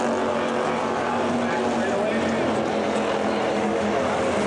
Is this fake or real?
real